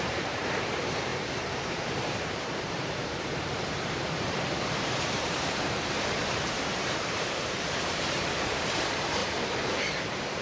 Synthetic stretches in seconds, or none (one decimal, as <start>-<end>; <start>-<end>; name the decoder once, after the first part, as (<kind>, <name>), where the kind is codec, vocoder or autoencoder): 0.0-10.4 (vocoder, BigVGAN v2)